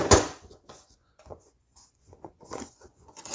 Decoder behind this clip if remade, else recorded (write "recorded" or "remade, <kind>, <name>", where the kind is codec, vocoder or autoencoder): remade, vocoder, Vocos